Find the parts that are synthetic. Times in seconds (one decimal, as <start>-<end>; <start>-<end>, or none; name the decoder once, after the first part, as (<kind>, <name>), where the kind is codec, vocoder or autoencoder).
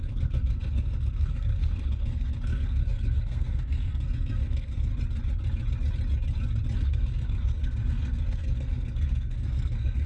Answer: 0.0-4.9 (codec, SNAC); 6.8-10.1